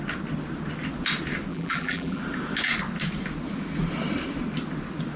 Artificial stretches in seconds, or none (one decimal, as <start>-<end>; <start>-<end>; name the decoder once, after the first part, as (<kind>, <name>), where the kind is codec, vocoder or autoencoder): 1.5-2.2 (vocoder, BigVGAN v2)